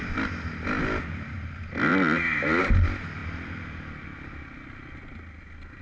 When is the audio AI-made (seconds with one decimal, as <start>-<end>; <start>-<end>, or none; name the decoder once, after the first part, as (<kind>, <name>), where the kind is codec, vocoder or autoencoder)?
none